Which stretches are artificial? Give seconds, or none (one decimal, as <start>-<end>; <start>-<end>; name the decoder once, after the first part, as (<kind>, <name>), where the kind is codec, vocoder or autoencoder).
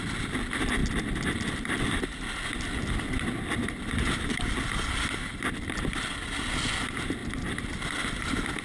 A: 7.2-7.8 (vocoder, BigVGAN v2)